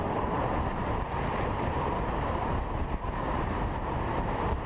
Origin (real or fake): fake